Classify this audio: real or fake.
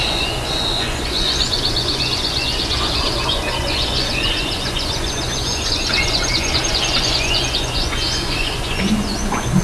fake